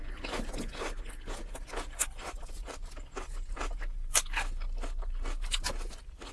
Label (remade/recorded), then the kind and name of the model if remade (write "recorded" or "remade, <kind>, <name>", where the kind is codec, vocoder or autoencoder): recorded